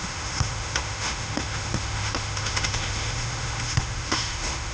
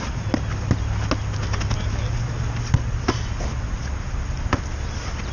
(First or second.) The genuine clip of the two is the second